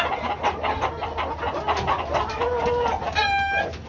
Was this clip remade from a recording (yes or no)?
no